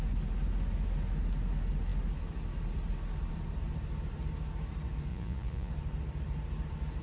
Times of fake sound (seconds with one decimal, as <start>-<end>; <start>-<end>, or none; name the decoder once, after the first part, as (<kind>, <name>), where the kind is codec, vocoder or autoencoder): 5.1-5.7 (vocoder, Vocos)